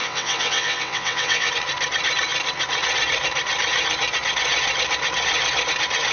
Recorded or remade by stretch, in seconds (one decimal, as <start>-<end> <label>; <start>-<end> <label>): 0.0-1.5 remade; 1.5-6.1 recorded